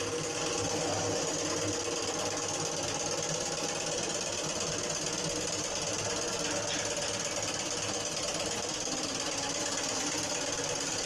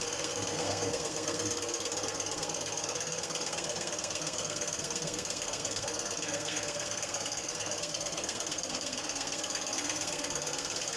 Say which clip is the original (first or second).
first